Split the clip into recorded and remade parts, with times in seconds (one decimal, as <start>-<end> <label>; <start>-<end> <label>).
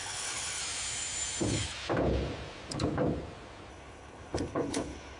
0.0-0.6 remade; 0.6-3.7 recorded; 3.7-5.2 remade